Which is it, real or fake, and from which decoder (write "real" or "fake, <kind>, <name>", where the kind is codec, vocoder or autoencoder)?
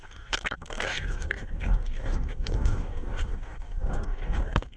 fake, codec, DAC